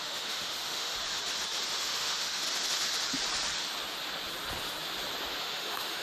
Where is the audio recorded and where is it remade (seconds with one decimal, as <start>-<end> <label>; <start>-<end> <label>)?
0.0-0.9 remade; 0.9-1.7 recorded; 1.7-2.4 remade; 2.4-5.4 recorded; 5.4-6.0 remade